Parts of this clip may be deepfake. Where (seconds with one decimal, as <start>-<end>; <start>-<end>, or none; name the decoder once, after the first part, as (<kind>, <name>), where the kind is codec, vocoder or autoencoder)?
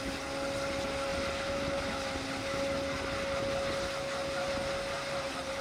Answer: none